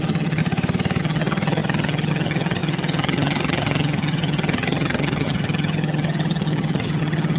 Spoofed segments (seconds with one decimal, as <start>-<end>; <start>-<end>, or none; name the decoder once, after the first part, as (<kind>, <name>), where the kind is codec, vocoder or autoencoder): 0.0-0.4 (vocoder, HiFi-GAN); 1.0-7.4